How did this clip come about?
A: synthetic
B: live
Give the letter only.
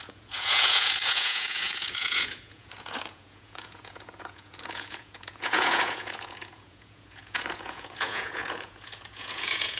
A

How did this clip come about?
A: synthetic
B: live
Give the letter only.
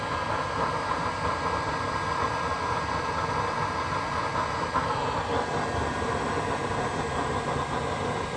B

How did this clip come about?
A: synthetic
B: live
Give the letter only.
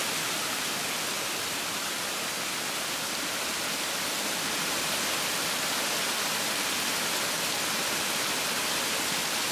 B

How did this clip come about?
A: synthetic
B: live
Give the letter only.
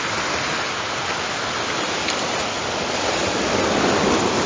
B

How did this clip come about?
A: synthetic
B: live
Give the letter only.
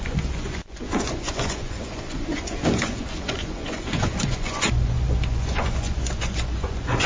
A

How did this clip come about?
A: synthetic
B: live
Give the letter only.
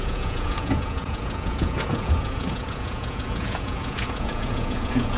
A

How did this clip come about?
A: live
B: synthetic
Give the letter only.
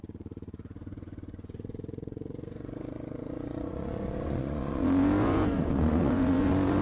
B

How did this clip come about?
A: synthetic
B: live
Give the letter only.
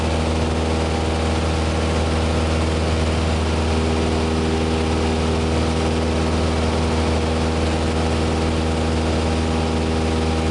B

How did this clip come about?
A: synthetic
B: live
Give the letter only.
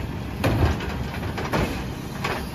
B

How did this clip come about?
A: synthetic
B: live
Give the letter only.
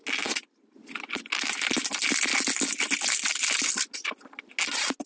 B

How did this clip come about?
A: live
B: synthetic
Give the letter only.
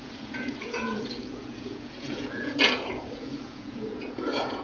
B